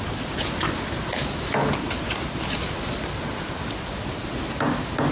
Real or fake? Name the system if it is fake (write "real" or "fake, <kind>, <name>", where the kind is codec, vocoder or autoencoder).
real